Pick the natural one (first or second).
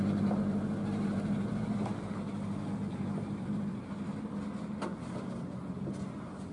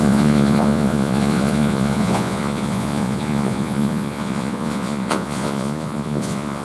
first